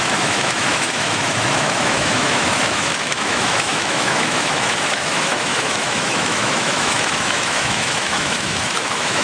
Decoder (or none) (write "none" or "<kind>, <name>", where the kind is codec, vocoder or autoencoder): autoencoder, DAC-VAE